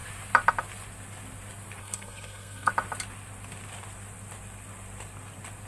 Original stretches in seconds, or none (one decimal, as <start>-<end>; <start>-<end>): 0.0-1.8; 2.7-5.7